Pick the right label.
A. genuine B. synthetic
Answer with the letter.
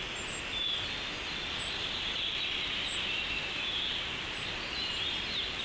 A